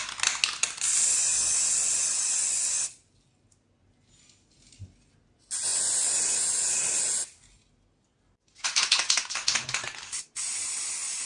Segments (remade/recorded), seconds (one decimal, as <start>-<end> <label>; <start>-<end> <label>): 0.0-11.3 recorded